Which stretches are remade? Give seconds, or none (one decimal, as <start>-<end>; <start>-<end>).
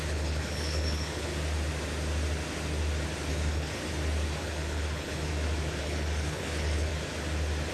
0.0-1.3; 3.3-3.8; 4.4-5.3; 5.8-6.9